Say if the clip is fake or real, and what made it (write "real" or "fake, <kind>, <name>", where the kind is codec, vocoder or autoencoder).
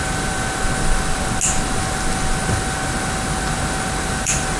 real